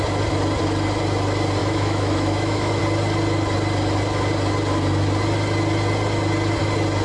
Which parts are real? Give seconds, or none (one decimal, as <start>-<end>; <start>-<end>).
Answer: 0.0-1.6; 2.8-7.0